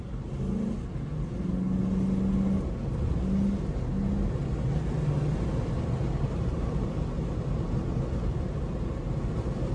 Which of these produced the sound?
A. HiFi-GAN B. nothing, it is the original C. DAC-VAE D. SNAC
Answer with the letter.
B